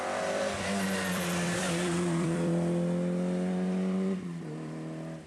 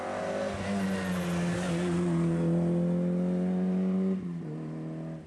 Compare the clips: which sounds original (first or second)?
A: second